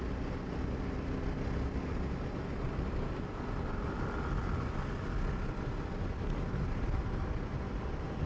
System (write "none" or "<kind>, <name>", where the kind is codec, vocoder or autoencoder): none